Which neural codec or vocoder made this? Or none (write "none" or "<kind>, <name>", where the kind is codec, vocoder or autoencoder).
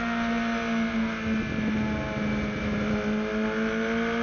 none